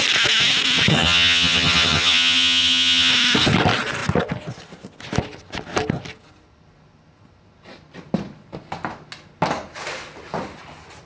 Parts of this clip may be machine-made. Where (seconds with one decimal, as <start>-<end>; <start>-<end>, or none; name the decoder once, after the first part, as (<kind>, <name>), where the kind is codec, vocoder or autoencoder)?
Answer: 0.9-3.1 (vocoder, HiFi-GAN)